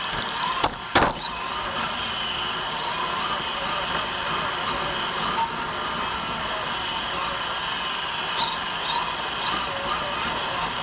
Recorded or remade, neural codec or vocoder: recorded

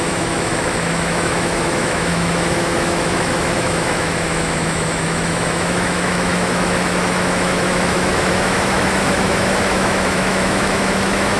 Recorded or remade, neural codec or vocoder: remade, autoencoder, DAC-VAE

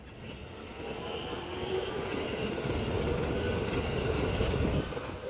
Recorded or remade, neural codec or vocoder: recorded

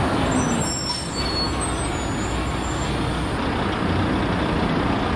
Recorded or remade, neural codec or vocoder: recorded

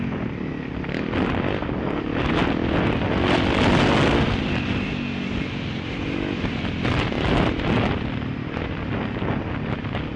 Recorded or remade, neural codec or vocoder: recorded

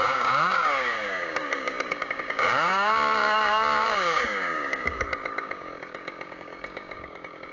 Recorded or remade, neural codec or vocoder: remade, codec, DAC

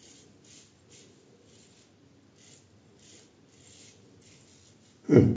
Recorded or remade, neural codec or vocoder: recorded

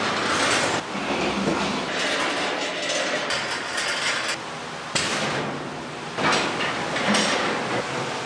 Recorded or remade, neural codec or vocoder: recorded